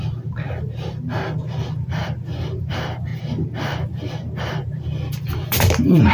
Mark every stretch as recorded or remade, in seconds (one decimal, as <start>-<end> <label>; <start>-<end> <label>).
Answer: 0.0-6.1 remade